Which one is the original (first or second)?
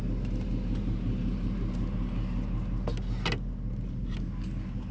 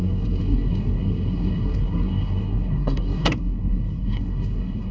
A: first